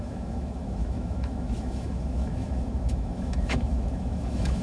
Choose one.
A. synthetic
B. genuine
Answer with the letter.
A